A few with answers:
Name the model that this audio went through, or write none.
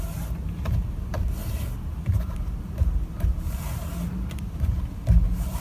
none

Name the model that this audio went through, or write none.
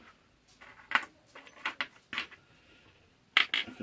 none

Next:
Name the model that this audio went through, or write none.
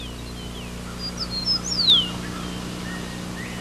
none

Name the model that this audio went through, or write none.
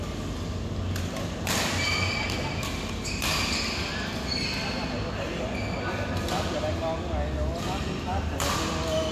none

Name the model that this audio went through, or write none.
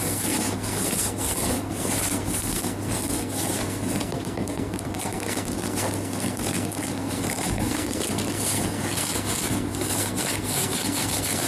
codec, SNAC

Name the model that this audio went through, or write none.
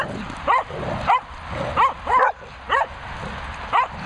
none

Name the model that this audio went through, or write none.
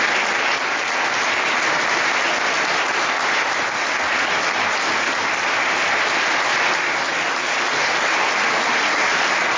none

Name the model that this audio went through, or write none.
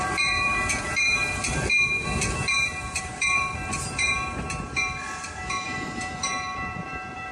vocoder, BigVGAN v2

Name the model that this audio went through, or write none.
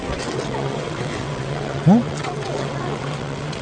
vocoder, WaveNeXt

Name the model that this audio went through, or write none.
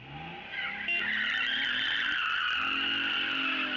none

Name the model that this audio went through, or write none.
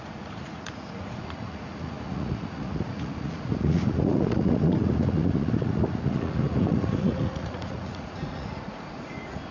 vocoder, Vocos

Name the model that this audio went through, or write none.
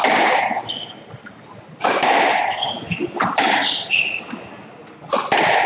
none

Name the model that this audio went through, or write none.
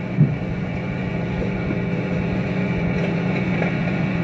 vocoder, Vocos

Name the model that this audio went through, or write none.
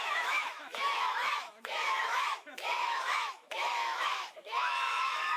autoencoder, DAC-VAE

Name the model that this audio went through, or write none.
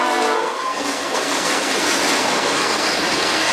codec, SNAC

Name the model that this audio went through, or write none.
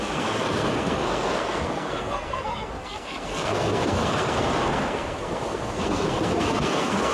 codec, SNAC